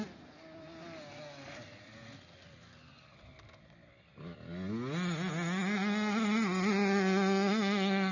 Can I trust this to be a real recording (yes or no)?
yes